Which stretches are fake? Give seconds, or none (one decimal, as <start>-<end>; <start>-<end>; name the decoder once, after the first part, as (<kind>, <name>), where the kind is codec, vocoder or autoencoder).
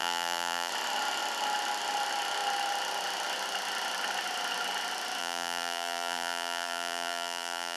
0.0-0.7 (vocoder, BigVGAN v2); 5.2-7.8